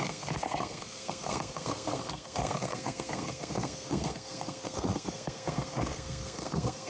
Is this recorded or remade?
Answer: remade